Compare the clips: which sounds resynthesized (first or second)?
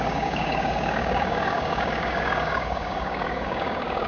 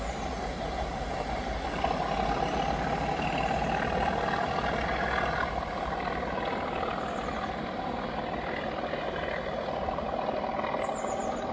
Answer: first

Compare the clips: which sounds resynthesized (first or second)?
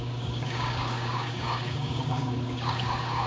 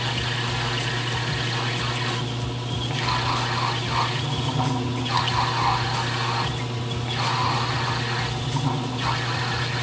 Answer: first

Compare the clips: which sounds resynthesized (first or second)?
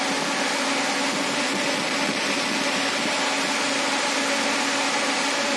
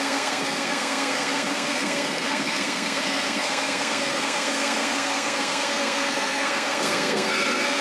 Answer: second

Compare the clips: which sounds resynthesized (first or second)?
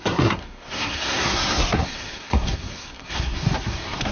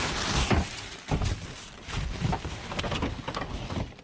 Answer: first